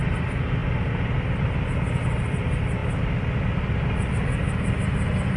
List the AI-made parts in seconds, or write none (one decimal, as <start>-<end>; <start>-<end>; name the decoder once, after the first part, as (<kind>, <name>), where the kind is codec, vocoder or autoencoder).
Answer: none